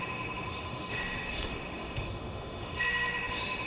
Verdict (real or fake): fake